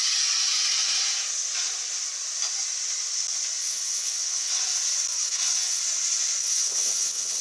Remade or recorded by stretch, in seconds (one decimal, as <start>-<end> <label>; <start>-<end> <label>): 0.0-3.6 recorded; 3.6-4.6 remade; 4.6-5.1 recorded; 5.1-5.8 remade; 5.8-6.4 recorded; 6.4-7.4 remade